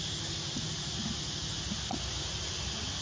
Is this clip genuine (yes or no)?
yes